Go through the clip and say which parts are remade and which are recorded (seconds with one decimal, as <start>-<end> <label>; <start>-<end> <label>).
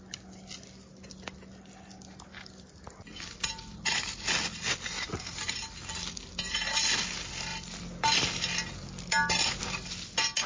0.0-10.5 recorded